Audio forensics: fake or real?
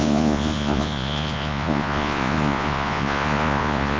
fake